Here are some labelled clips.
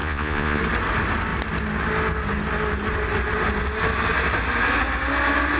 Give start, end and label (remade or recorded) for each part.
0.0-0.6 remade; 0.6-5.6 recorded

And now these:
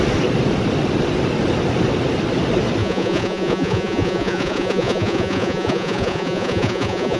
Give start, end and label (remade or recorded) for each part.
0.0-2.8 recorded; 2.8-7.2 remade

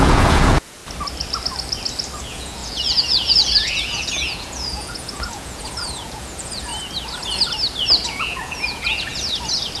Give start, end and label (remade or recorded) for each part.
0.0-0.8 remade; 0.8-2.2 recorded; 2.2-6.7 remade; 6.7-8.1 recorded; 8.1-9.1 remade; 9.1-9.8 recorded

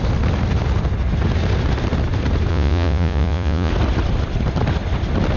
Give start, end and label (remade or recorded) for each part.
0.0-2.5 recorded; 2.5-3.7 remade; 3.7-5.4 recorded

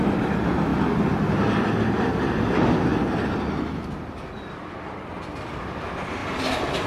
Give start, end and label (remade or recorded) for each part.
0.0-6.9 recorded